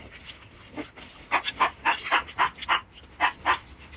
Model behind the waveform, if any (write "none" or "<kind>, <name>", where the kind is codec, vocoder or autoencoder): none